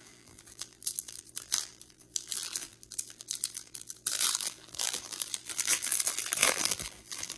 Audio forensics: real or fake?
fake